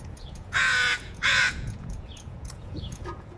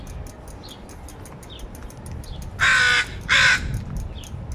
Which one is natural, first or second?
second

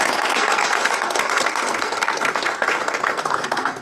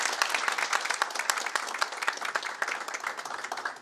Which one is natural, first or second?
second